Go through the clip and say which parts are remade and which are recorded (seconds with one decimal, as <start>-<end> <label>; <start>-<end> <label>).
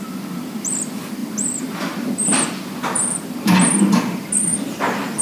0.0-5.2 recorded